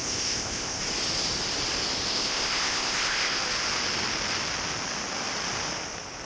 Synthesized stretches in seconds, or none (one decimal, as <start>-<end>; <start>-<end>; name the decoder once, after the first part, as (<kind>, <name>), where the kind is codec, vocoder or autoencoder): 0.0-0.8 (codec, ZipCodec); 2.1-3.4